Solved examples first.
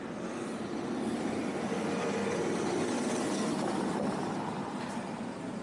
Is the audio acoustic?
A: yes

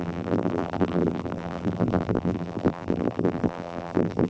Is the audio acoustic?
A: no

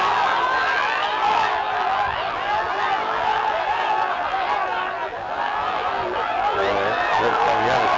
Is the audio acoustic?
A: no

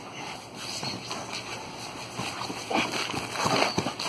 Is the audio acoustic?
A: yes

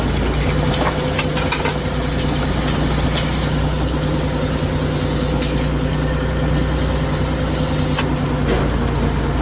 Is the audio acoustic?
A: yes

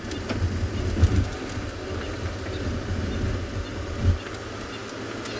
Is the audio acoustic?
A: yes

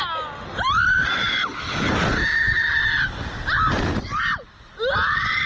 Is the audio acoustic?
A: yes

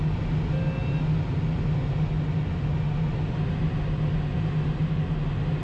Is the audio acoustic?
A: yes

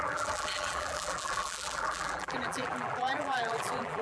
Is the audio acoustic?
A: no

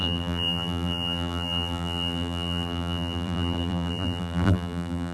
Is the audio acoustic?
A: no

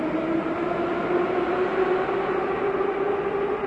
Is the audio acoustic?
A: yes